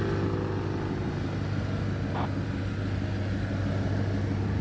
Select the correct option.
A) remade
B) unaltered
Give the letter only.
B